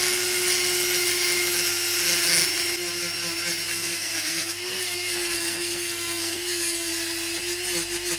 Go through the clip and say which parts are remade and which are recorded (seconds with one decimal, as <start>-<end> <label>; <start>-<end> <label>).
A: 0.0-3.7 recorded; 3.7-6.9 remade; 6.9-8.2 recorded